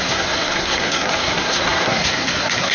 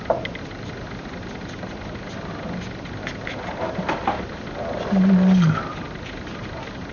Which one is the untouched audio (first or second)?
second